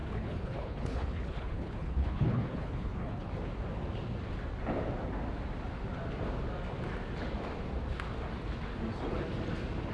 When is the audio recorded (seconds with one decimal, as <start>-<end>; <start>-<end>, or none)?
3.3-9.9